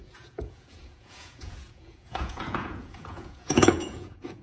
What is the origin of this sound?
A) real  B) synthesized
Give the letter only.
B